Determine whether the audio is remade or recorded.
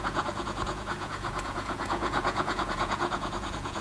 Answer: remade